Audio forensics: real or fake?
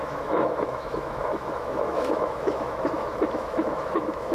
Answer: fake